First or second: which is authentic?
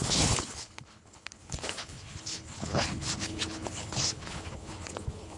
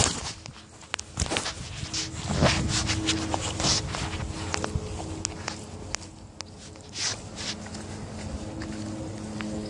second